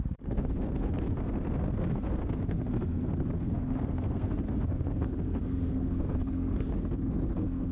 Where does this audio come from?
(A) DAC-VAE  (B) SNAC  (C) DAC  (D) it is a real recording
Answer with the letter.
B